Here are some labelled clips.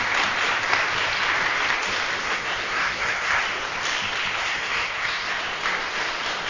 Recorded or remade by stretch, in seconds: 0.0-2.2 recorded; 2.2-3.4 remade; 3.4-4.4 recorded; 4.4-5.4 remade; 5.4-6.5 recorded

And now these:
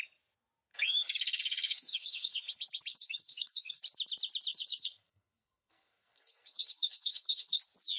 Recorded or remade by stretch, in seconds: 0.0-0.7 recorded; 0.7-2.4 remade; 2.4-2.9 recorded; 2.9-3.8 remade; 3.8-4.5 recorded; 4.5-7.6 remade; 7.6-8.0 recorded

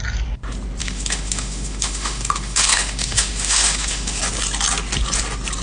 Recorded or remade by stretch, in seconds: 0.0-0.8 recorded; 0.8-4.2 remade; 4.2-5.6 recorded

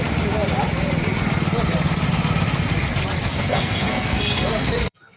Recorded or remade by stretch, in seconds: 0.0-3.3 recorded; 3.3-5.2 remade

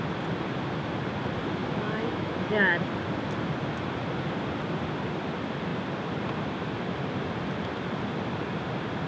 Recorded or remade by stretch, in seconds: 0.0-1.6 recorded; 1.6-2.8 remade; 2.8-9.1 recorded